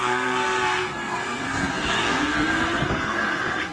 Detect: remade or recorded remade